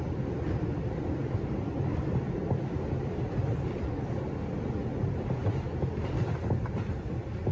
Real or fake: real